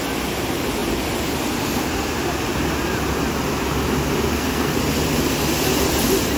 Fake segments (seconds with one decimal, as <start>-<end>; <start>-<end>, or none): 4.3-4.8